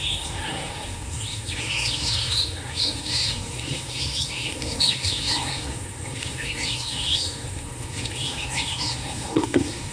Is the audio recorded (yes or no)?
no